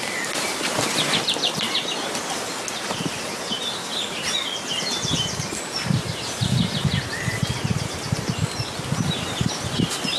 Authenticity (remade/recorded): recorded